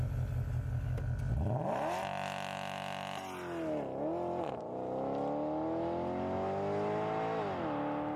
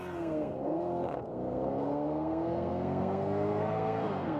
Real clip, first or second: first